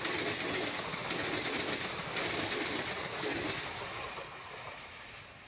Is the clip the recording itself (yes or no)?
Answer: yes